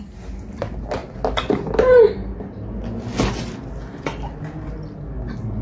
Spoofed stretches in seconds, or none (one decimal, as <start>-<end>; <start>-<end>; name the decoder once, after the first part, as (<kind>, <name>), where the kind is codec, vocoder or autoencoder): none